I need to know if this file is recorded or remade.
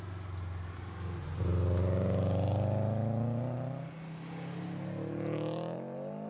recorded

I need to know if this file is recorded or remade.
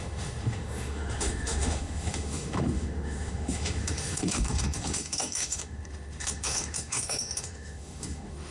remade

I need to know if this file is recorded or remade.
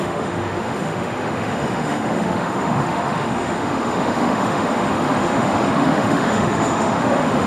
remade